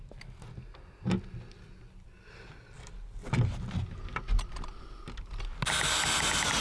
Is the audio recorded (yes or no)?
yes